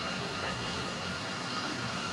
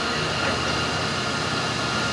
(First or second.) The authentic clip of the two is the second